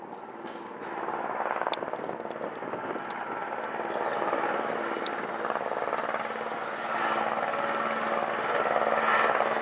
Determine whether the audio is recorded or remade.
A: recorded